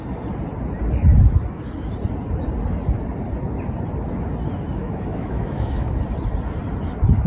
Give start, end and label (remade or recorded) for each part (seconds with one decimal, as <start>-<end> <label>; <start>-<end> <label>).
0.0-4.8 recorded; 4.8-5.9 remade; 5.9-7.3 recorded

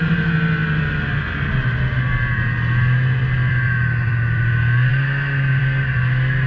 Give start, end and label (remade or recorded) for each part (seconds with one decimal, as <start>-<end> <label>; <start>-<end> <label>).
0.0-6.5 recorded

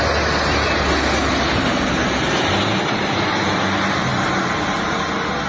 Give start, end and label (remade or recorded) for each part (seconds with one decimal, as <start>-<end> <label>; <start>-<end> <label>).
0.0-5.5 recorded

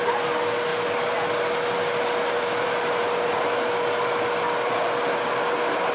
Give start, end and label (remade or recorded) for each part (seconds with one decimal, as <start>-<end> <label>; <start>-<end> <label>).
0.0-5.9 recorded